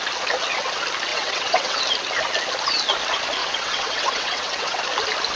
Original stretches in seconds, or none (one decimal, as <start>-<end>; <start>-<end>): 0.0-1.1; 1.8-3.4; 4.8-5.4